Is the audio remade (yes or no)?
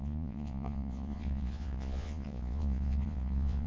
yes